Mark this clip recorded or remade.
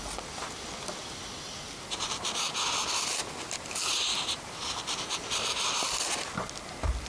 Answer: recorded